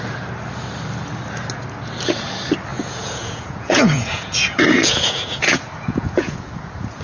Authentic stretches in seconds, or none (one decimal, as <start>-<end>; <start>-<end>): 0.0-2.7